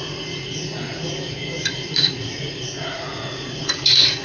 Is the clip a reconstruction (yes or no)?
yes